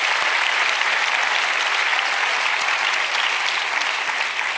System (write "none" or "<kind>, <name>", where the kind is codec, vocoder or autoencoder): none